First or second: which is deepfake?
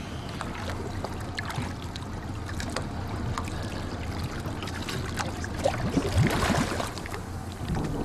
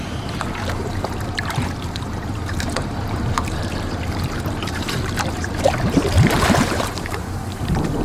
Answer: second